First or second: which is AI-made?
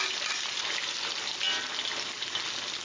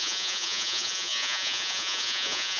second